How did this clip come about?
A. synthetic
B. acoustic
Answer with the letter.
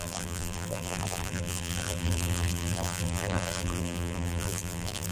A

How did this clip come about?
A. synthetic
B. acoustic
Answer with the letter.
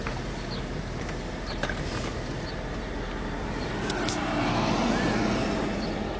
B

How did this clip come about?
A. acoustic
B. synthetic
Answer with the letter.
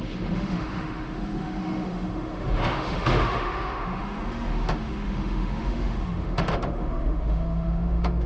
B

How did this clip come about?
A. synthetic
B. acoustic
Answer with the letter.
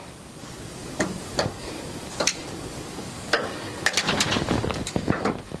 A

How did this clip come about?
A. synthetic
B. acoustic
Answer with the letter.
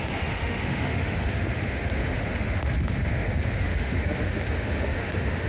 A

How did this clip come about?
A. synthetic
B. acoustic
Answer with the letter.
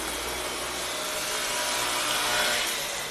B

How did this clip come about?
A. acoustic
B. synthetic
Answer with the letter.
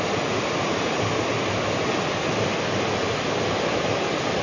A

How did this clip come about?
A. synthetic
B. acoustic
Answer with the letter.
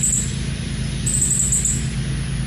B